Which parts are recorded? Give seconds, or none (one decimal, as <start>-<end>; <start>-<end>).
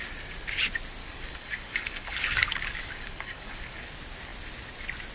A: 0.0-1.0; 3.9-5.1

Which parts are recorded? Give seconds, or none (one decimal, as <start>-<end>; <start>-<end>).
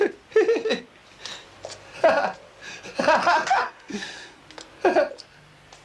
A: 0.0-3.6; 4.4-5.8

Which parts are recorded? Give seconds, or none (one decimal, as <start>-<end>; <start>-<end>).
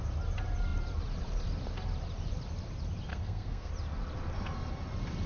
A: 0.0-3.1; 3.7-5.3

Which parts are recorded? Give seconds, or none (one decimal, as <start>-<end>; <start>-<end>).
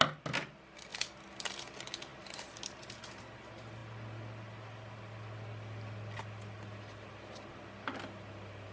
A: 0.0-8.7